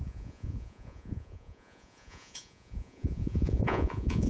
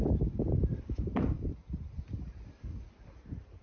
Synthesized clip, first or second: first